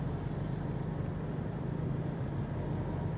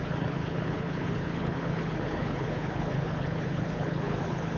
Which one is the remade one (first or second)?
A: second